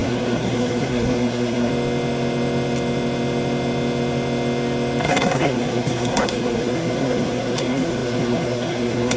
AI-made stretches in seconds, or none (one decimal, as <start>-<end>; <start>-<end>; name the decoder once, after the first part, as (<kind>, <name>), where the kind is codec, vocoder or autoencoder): 0.0-1.7 (codec, SNAC); 5.0-9.2